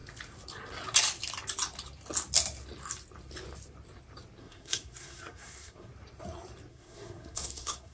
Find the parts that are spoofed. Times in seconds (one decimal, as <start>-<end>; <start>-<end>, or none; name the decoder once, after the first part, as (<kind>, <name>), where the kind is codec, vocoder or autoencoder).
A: 4.4-5.9 (codec, SNAC); 6.7-7.9